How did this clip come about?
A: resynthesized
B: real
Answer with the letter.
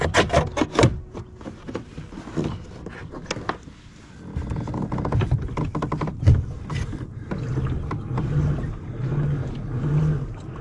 B